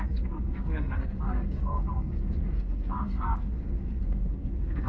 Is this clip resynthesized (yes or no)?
yes